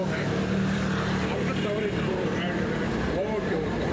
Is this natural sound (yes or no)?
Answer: no